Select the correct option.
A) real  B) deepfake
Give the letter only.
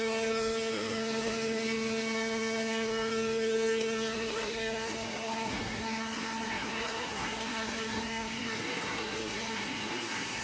B